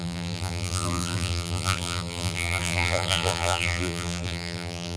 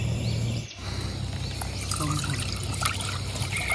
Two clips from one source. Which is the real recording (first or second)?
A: second